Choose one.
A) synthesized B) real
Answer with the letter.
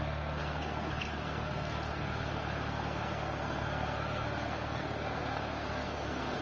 A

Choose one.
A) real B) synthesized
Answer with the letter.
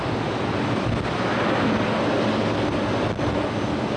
A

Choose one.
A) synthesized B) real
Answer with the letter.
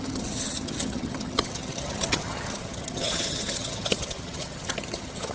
A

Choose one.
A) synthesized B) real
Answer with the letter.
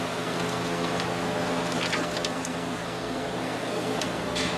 A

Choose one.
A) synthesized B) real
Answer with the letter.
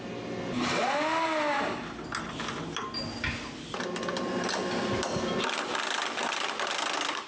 B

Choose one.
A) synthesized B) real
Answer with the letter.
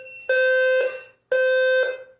B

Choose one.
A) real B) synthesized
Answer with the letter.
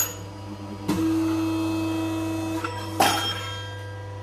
A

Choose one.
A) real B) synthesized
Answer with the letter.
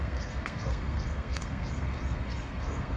B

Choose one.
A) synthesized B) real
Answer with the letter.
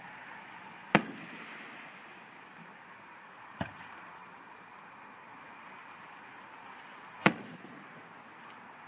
B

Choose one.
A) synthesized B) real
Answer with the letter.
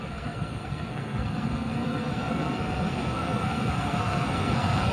A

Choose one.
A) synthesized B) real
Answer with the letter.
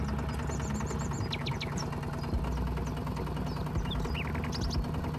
B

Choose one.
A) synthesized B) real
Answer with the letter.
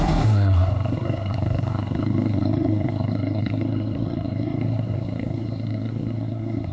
A